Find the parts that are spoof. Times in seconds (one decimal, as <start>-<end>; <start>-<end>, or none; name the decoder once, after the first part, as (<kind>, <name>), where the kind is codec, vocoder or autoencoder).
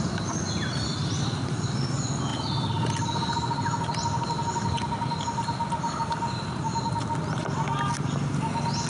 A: none